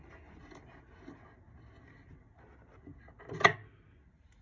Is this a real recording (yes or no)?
yes